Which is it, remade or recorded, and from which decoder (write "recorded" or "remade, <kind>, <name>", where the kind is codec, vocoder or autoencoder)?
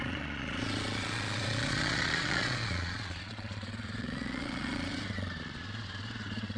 remade, vocoder, Vocos